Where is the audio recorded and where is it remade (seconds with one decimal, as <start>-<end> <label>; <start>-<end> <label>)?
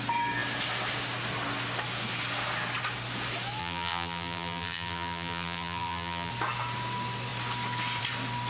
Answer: 0.0-3.6 recorded; 3.6-6.3 remade; 6.3-8.5 recorded